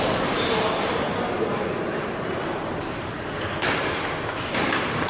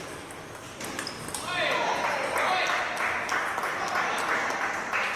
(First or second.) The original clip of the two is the second